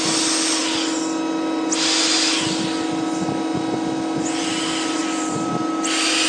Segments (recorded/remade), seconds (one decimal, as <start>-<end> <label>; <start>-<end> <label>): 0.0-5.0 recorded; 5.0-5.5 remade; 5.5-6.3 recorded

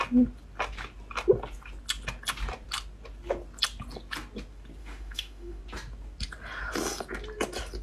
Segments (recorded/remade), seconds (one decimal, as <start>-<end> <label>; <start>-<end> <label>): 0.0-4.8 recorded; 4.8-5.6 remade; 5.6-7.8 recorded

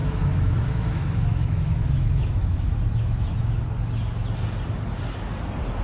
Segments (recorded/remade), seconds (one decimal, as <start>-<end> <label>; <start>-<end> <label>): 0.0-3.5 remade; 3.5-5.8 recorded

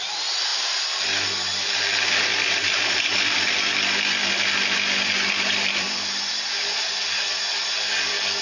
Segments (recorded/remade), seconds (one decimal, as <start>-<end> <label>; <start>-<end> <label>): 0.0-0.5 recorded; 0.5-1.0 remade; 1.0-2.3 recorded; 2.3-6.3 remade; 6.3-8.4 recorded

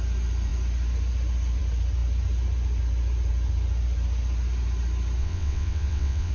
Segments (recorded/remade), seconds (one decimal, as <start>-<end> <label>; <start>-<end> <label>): 0.0-5.2 recorded; 5.2-6.3 remade

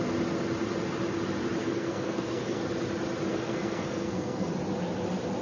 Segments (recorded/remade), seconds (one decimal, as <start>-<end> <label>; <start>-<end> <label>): 0.0-1.6 recorded; 1.6-2.6 remade; 2.6-3.3 recorded; 3.3-4.5 remade; 4.5-5.4 recorded